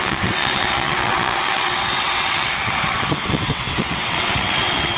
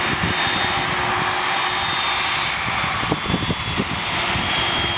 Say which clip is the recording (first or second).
second